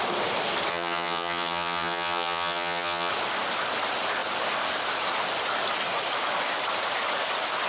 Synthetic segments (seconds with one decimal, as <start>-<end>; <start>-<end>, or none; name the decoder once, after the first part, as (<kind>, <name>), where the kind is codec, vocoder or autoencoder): 0.7-3.1 (vocoder, HiFi-GAN)